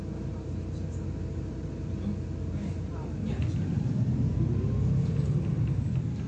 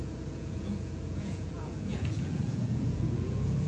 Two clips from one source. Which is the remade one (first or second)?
second